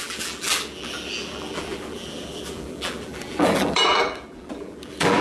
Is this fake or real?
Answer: fake